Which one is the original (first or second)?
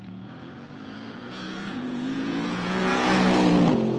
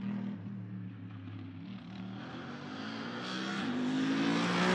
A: second